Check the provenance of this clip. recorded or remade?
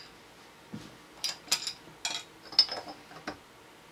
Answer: recorded